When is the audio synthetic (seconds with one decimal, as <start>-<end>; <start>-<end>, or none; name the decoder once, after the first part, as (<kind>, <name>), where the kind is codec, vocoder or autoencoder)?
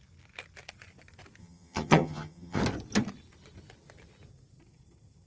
1.4-2.6 (vocoder, HiFi-GAN)